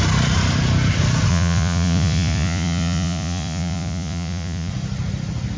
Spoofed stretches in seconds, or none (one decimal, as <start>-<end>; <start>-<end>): 1.3-4.7